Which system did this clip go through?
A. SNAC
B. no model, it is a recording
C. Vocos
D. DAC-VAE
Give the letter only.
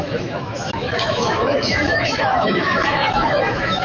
D